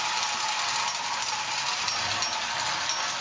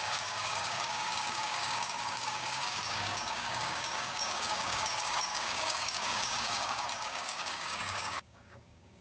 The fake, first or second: second